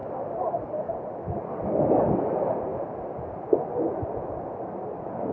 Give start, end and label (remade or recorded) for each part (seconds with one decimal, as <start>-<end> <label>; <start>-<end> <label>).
0.0-5.3 recorded